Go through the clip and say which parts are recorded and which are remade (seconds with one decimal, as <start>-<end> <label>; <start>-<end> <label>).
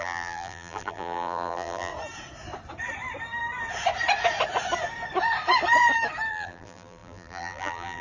0.0-1.9 remade; 1.9-6.3 recorded; 6.3-8.0 remade